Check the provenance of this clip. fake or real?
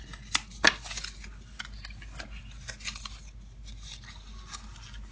real